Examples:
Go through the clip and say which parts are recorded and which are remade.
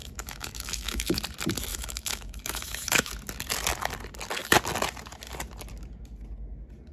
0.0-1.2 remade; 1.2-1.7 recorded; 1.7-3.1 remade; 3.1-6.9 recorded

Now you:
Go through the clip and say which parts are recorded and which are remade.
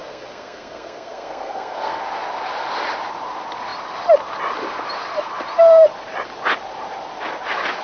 0.0-2.0 remade; 2.0-7.8 recorded